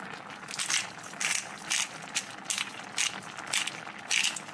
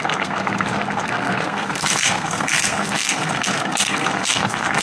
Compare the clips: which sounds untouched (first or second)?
first